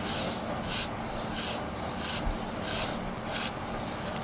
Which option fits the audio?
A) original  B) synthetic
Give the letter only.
A